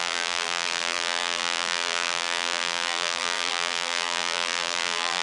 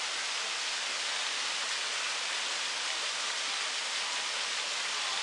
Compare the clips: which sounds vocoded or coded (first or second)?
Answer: first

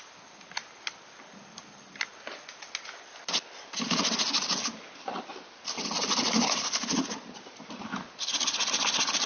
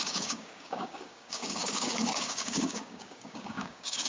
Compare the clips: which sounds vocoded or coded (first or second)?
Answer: second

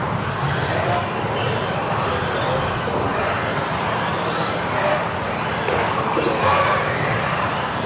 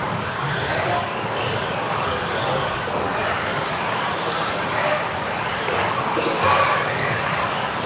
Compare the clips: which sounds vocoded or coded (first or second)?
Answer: second